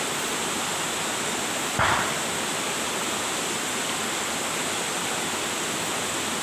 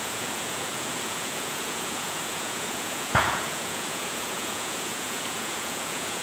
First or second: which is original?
first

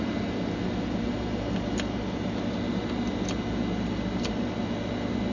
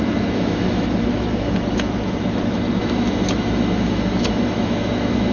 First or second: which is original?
first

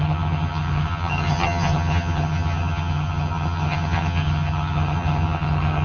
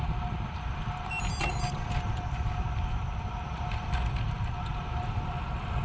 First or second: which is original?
second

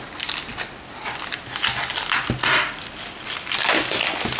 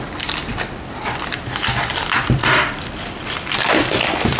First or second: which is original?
first